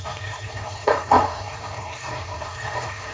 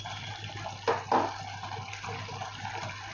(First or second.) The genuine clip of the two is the second